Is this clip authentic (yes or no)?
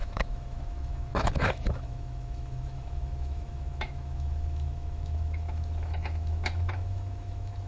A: no